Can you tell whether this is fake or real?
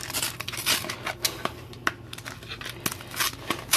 real